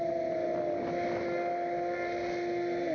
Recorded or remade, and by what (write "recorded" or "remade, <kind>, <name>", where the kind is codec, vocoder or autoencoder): recorded